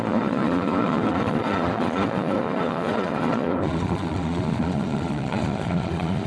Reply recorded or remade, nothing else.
remade